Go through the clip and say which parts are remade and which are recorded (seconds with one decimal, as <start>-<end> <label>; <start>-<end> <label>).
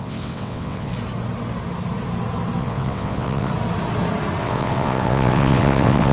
0.0-0.9 remade; 0.9-2.6 recorded; 2.6-3.5 remade; 3.5-4.4 recorded; 4.4-6.1 remade